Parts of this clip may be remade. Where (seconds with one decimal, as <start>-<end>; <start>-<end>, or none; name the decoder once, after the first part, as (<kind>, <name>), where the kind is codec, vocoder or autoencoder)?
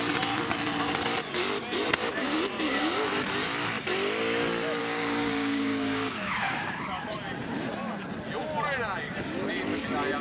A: 4.8-6.8 (codec, DAC)